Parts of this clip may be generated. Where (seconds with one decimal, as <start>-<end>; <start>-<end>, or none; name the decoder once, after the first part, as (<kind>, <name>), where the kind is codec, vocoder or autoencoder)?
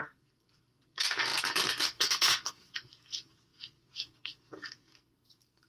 0.0-5.7 (codec, SNAC)